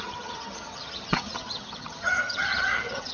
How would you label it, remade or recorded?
remade